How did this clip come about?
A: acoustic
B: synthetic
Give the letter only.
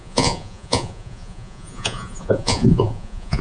B